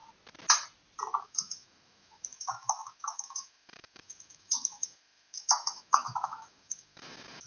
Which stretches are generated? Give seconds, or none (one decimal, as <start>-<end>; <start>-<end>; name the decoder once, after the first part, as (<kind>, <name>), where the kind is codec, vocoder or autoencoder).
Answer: 1.2-7.5 (autoencoder, DAC-VAE)